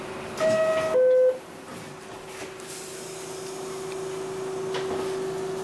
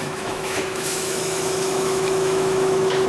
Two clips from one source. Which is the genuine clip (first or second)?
first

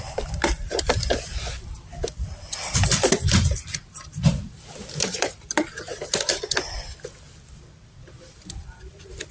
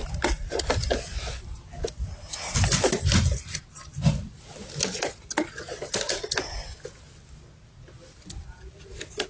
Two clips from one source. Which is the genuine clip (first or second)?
second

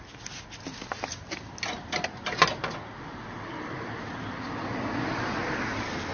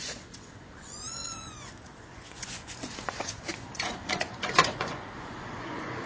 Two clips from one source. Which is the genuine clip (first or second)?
first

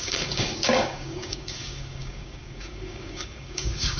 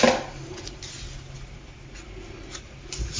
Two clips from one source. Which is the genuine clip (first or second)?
second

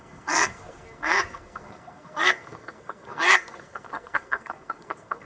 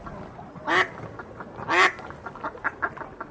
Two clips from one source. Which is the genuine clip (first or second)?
second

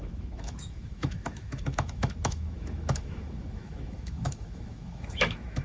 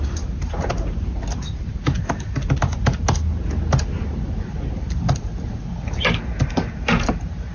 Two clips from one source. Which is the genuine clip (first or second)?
second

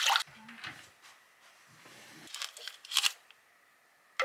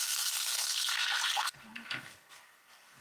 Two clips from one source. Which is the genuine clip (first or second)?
first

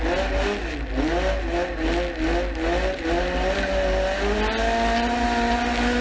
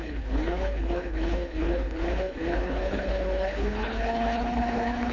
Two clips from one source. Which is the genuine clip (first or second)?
first